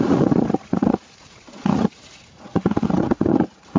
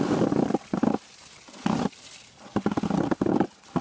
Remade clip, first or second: first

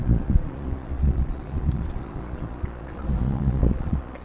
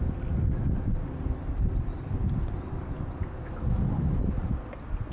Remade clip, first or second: first